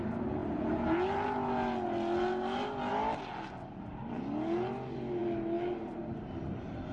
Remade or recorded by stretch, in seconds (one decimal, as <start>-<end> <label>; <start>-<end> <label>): 0.0-6.9 recorded